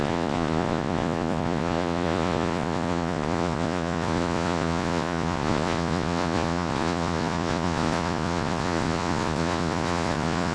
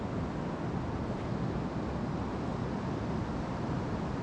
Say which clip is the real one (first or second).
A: second